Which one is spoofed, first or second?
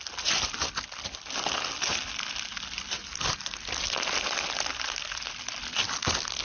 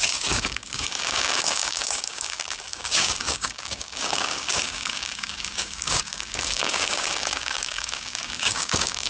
second